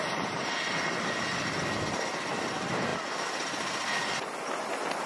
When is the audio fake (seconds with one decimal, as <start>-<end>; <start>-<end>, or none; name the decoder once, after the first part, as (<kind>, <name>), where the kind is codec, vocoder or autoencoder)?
none